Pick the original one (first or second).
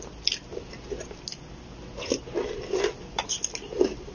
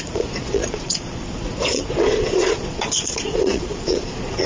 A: first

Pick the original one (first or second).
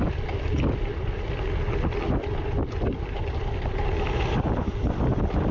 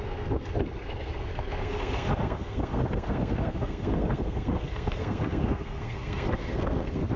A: first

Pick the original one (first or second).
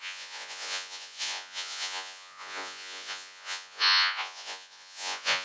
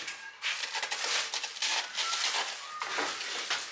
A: second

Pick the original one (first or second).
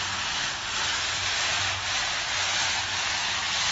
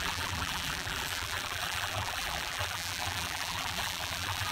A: first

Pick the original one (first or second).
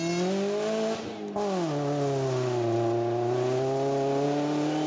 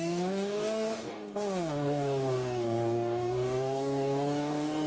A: first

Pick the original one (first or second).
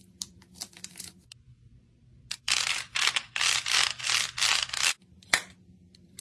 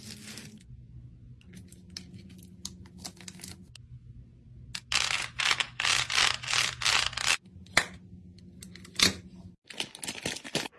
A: second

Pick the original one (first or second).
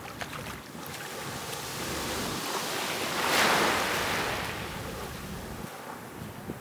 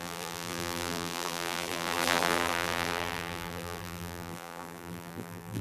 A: first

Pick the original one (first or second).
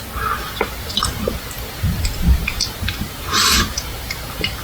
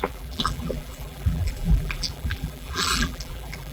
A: first